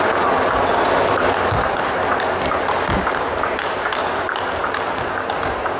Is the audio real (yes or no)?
yes